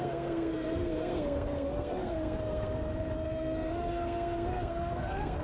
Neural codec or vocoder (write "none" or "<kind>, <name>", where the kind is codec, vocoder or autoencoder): codec, SNAC